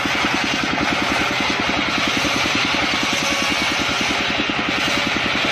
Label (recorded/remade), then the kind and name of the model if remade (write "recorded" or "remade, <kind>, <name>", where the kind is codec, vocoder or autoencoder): recorded